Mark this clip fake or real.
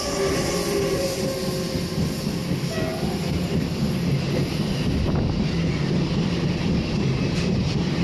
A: real